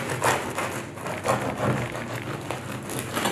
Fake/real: real